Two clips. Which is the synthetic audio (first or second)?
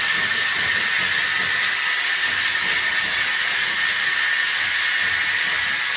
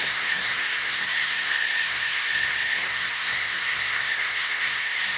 second